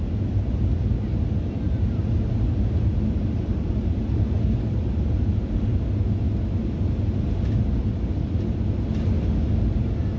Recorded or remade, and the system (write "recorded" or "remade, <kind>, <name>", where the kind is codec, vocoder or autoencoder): recorded